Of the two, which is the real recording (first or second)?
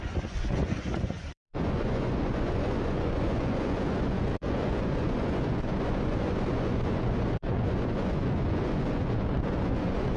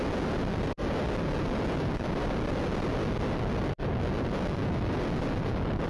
second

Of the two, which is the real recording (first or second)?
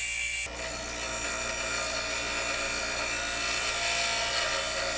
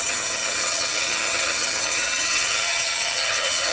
first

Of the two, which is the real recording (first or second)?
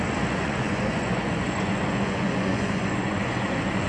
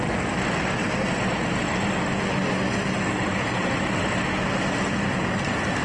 second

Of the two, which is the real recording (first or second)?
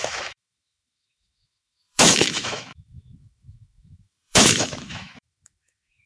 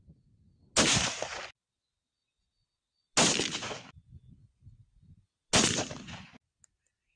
second